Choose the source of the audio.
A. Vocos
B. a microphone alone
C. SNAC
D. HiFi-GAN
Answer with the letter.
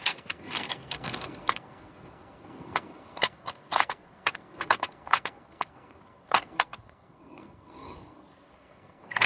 C